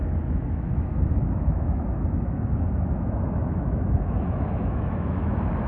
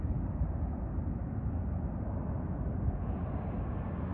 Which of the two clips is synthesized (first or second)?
first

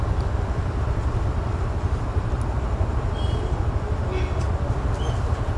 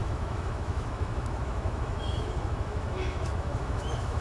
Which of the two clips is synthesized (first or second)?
second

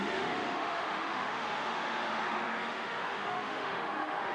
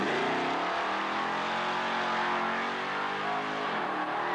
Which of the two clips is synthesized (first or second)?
first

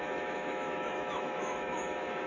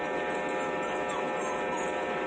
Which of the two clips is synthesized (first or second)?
first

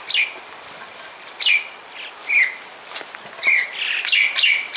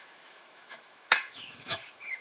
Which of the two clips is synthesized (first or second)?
second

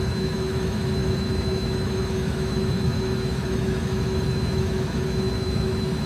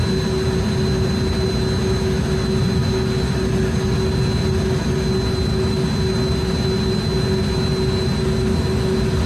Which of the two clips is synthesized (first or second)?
first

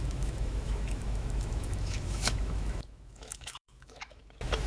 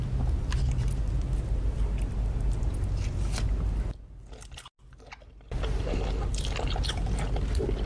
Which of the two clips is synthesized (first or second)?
first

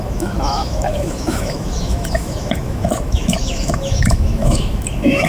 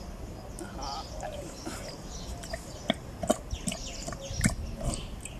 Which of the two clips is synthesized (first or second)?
first